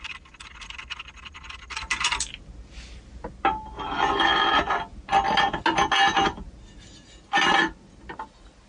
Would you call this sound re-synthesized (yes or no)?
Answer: no